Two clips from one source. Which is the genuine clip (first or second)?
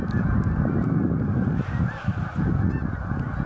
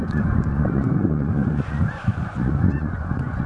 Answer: first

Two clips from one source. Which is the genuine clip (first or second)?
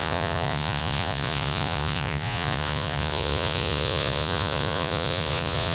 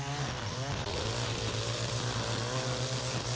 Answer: second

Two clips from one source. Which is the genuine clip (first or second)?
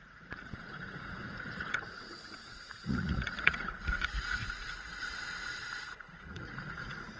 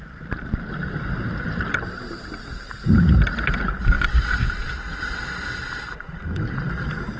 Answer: second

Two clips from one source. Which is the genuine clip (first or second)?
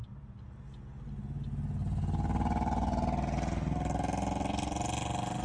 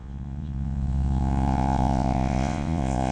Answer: first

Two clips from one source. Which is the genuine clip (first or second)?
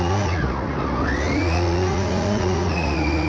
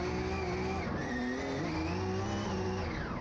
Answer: second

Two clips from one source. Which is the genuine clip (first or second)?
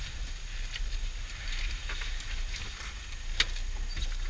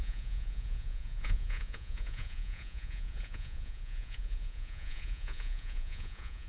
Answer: first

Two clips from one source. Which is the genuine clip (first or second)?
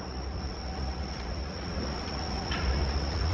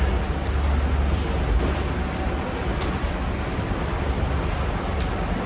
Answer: second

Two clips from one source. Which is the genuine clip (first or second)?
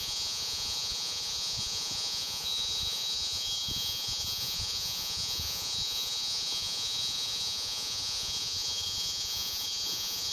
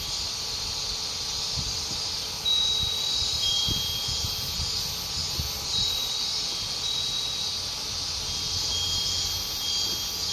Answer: second